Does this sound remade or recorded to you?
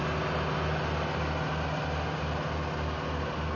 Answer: recorded